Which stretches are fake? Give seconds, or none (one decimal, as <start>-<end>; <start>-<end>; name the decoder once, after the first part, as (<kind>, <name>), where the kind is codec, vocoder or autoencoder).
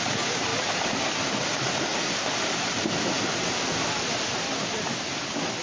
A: 0.5-1.1 (vocoder, BigVGAN v2); 1.9-5.1